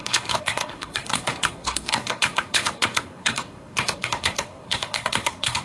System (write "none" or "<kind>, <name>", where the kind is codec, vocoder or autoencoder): codec, SNAC